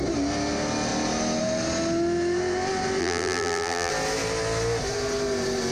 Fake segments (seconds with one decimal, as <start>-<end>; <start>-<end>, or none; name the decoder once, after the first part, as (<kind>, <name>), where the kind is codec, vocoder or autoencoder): 3.0-3.9 (vocoder, BigVGAN v2)